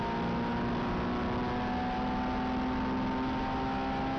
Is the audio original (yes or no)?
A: yes